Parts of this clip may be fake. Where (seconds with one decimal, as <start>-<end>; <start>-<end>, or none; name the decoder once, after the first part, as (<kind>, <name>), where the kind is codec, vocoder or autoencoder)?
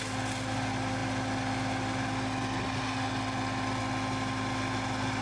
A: none